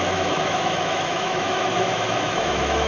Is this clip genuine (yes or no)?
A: no